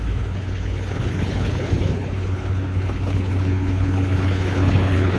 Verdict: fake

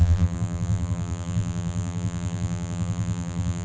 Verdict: fake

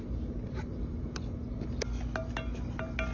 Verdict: real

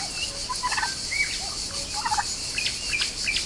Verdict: real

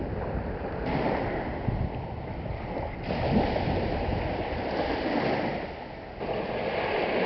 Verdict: real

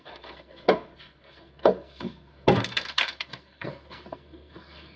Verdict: fake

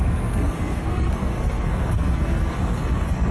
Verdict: fake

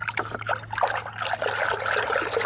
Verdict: real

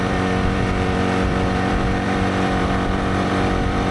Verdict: fake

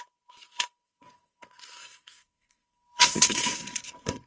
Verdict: fake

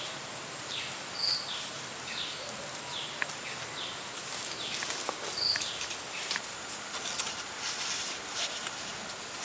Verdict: real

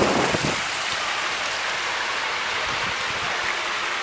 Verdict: real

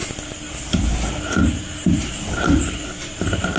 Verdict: real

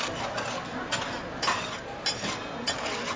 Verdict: real